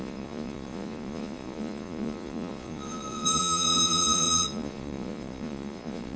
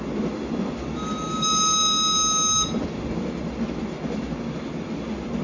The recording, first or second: second